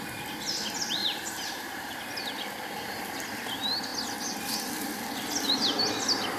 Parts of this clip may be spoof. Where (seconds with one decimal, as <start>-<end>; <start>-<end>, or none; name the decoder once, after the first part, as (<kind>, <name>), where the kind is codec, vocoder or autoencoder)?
1.0-2.2 (vocoder, BigVGAN v2)